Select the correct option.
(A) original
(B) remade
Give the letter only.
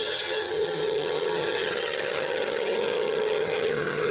B